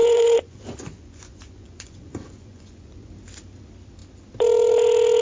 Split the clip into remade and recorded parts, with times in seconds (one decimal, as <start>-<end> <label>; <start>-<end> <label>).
0.0-3.1 remade; 3.1-5.2 recorded